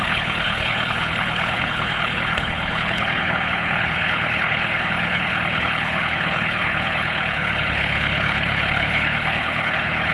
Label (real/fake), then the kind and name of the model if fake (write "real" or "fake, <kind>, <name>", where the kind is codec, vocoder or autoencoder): fake, codec, HILCodec